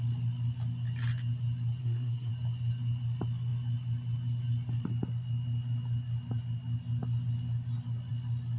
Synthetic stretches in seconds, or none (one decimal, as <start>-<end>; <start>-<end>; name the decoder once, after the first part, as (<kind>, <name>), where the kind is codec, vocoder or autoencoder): 1.8-2.3 (codec, SNAC)